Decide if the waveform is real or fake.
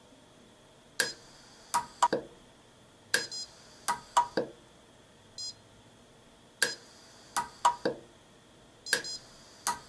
real